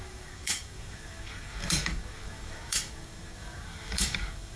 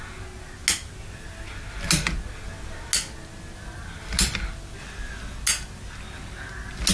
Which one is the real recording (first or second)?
second